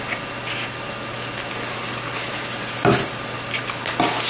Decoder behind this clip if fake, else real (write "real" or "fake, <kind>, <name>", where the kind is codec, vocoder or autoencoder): real